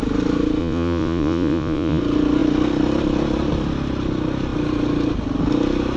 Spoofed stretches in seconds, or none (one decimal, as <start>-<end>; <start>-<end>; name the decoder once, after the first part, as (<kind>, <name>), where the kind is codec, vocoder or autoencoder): 0.6-2.0 (vocoder, Vocos)

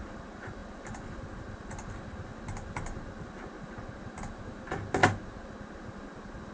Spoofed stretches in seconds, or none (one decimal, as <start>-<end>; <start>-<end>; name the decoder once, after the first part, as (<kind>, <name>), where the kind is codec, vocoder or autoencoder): none

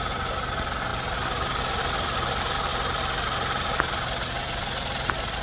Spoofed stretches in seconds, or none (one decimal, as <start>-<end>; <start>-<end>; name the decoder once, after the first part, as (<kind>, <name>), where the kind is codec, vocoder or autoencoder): none

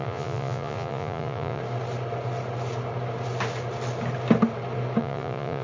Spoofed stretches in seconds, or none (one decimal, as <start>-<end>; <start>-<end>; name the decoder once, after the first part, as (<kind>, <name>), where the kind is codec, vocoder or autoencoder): 0.0-1.6 (vocoder, Vocos); 5.0-5.6

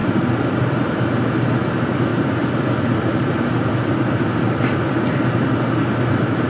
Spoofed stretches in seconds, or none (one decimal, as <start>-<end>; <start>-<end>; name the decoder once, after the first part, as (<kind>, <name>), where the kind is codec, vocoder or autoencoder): none

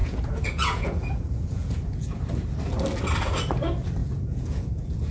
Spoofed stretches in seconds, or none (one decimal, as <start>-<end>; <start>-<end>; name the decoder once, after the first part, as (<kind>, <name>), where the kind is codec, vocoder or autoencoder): 0.0-2.2 (vocoder, Vocos); 4.0-5.1

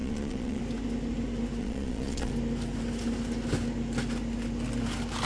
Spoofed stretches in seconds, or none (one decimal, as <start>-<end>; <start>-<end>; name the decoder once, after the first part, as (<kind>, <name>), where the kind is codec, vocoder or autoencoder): 0.0-0.6 (vocoder, Vocos); 1.6-2.3